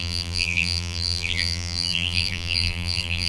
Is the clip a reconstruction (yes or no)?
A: yes